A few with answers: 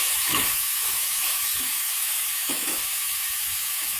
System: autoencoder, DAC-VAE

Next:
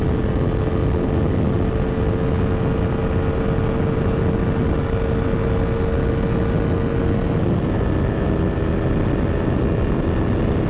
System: none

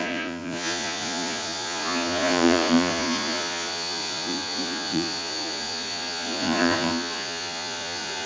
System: vocoder, Vocos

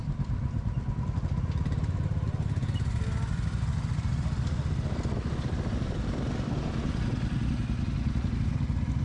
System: none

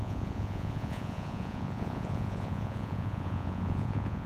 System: vocoder, Vocos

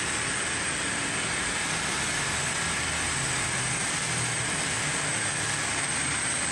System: none